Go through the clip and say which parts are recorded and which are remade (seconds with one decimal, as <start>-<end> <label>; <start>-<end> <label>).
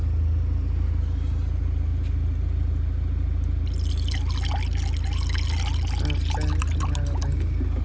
0.0-7.8 recorded